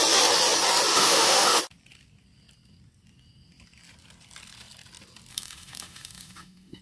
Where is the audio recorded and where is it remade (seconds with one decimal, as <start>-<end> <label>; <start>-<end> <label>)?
0.0-0.9 recorded; 0.9-1.6 remade; 1.6-5.3 recorded; 5.3-6.8 remade